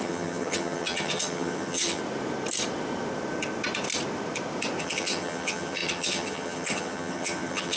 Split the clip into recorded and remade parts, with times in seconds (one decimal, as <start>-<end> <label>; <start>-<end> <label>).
0.0-2.0 remade; 2.0-4.8 recorded; 4.8-7.8 remade